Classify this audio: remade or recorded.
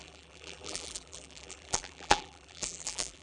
remade